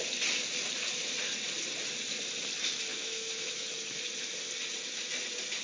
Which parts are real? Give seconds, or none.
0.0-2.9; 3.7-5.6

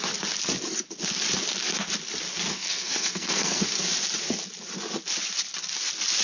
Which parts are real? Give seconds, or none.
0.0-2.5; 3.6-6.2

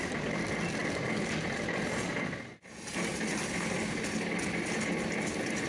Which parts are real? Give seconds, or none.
0.0-0.8; 3.4-5.7

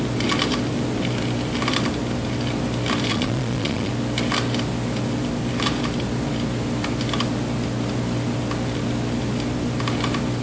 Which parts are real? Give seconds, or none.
0.0-3.1; 3.9-10.4

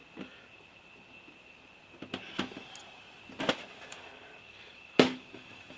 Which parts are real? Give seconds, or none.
0.0-3.5